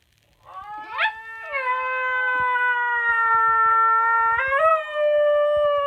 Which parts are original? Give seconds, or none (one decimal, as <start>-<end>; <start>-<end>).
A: 0.0-5.9